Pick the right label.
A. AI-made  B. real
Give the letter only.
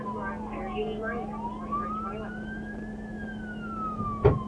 B